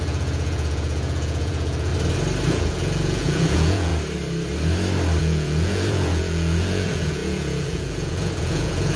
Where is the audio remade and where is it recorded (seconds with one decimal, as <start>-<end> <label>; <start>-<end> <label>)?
0.0-1.9 remade; 1.9-2.5 recorded; 2.5-3.9 remade; 3.9-5.2 recorded; 5.2-9.0 remade